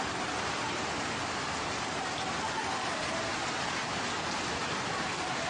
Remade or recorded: recorded